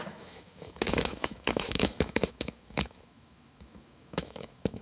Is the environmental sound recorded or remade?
remade